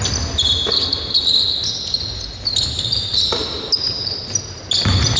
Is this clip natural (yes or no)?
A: yes